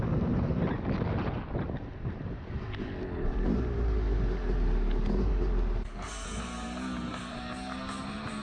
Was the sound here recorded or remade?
recorded